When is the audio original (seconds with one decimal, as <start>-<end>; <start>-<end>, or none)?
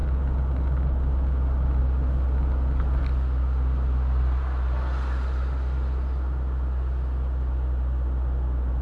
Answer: 0.0-8.8